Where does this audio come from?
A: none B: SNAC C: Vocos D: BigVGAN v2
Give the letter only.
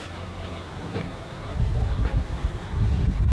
B